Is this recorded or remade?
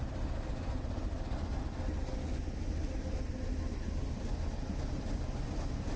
recorded